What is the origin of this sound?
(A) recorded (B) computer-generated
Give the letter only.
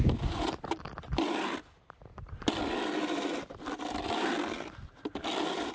A